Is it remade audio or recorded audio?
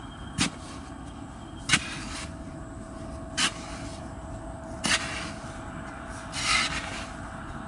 recorded